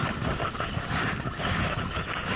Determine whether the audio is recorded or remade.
recorded